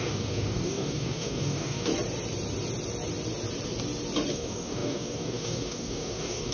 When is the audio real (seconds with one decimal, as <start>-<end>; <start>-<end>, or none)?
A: 1.9-4.3